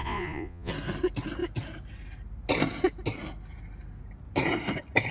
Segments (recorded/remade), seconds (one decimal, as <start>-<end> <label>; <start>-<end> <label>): 0.0-0.7 remade; 0.7-5.1 recorded